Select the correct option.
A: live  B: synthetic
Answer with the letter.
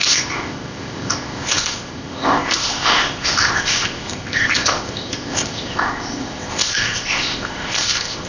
B